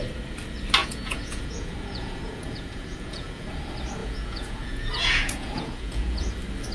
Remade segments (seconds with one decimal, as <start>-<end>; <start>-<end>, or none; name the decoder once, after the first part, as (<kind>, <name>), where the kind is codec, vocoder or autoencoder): 0.8-3.5 (vocoder, Vocos); 4.0-6.3